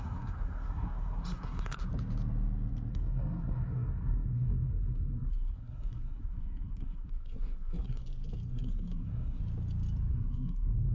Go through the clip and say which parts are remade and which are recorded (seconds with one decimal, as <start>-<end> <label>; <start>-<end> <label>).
0.0-1.9 remade; 1.9-2.9 recorded; 2.9-8.0 remade; 8.0-8.5 recorded; 8.5-9.4 remade; 9.4-10.1 recorded; 10.1-10.9 remade